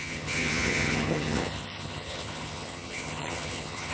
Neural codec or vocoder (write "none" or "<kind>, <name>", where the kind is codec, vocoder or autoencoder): vocoder, HiFi-GAN